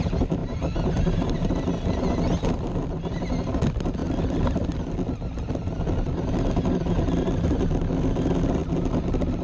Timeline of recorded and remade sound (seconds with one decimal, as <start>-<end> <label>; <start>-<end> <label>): 0.0-0.4 recorded; 0.4-1.5 remade; 1.5-9.4 recorded